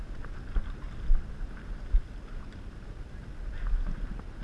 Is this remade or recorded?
recorded